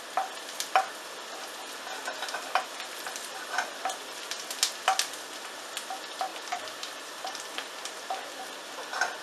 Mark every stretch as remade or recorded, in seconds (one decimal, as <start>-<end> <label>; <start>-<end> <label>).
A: 0.0-6.3 recorded; 6.3-7.9 remade; 7.9-9.2 recorded